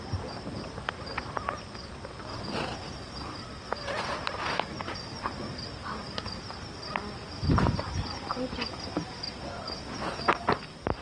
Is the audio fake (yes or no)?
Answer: no